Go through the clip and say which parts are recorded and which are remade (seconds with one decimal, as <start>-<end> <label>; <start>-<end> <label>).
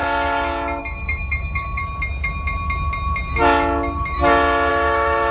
0.0-0.8 recorded; 0.8-1.8 remade; 1.8-4.7 recorded; 4.7-5.3 remade